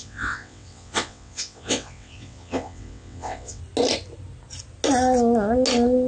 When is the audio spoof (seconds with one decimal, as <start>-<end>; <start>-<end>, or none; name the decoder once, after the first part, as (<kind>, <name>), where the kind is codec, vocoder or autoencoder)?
0.0-3.6 (vocoder, WaveNeXt)